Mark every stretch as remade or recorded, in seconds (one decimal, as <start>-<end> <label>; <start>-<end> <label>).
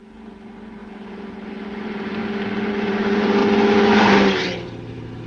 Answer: 0.0-2.2 remade; 2.2-2.7 recorded; 2.7-3.4 remade; 3.4-4.1 recorded; 4.1-5.3 remade